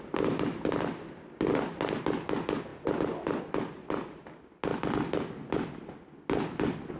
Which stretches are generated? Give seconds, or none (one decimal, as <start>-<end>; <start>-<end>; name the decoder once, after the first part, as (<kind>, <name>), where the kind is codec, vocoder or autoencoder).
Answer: none